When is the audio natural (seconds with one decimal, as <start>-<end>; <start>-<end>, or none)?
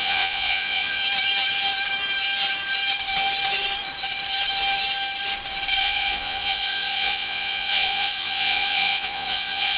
1.0-5.8